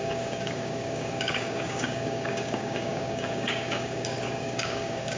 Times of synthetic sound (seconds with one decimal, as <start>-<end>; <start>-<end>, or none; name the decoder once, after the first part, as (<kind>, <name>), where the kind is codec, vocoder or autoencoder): 0.0-5.2 (codec, DAC)